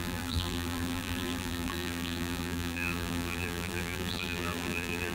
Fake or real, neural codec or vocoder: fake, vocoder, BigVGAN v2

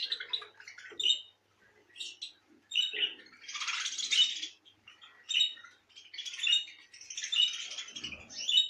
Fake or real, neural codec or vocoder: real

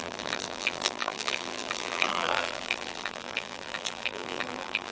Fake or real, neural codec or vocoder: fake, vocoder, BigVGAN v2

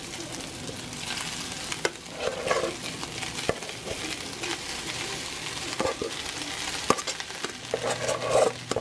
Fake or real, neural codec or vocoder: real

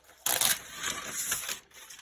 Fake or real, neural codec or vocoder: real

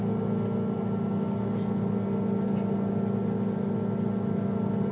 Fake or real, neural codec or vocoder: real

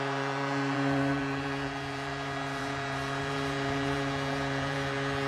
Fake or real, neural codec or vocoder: fake, vocoder, BigVGAN v2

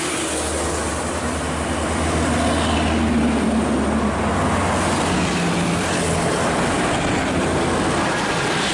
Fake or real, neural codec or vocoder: real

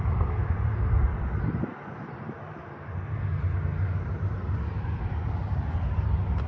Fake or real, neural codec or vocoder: fake, vocoder, BigVGAN v2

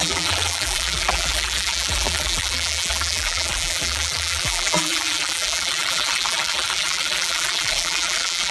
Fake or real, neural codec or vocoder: fake, vocoder, BigVGAN v2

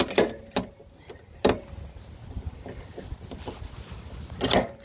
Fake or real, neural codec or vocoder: real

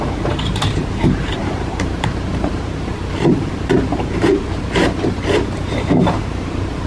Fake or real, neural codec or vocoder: fake, vocoder, BigVGAN v2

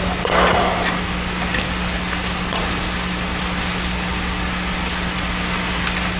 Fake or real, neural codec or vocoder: real